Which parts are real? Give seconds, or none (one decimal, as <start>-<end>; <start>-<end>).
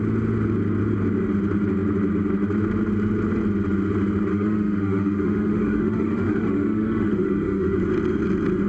0.0-4.3; 7.8-8.7